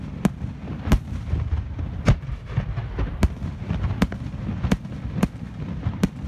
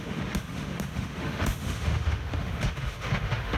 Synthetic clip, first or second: second